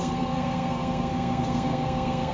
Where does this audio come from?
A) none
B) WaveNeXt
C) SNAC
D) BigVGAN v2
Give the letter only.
C